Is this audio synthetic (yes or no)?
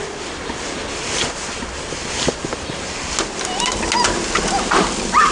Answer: no